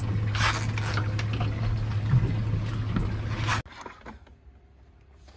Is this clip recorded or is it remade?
recorded